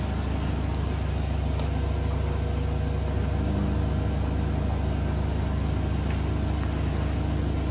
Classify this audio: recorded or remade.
recorded